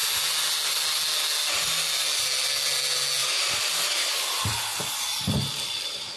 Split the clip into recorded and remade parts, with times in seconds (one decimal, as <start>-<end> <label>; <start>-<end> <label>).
0.0-3.2 recorded; 3.2-3.7 remade; 3.7-6.2 recorded